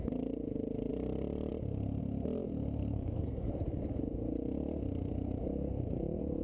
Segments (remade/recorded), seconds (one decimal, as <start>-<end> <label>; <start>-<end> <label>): 0.0-2.8 recorded; 2.8-3.5 remade; 3.5-6.4 recorded